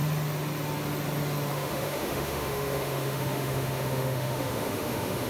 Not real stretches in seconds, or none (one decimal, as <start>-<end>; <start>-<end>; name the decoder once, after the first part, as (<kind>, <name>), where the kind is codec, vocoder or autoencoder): 1.5-5.3 (autoencoder, DAC-VAE)